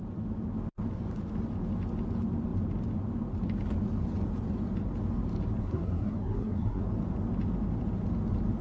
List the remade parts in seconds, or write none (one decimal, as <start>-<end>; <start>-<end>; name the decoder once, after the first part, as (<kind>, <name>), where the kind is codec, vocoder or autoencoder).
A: 5.6-6.8 (codec, SNAC)